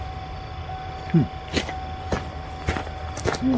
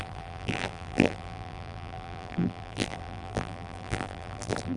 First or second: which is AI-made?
second